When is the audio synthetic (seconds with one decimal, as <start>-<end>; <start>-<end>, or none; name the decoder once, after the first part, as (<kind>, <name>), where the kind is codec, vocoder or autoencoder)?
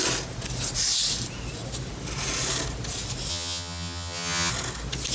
3.3-4.5 (vocoder, HiFi-GAN)